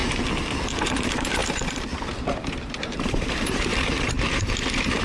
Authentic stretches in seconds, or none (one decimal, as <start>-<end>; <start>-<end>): 0.0-0.8; 1.4-2.2; 3.7-4.2